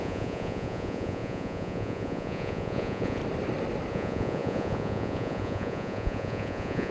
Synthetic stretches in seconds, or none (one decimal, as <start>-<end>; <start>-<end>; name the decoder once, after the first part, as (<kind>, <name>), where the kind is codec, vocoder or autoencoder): 0.0-3.2 (vocoder, Vocos); 3.9-6.9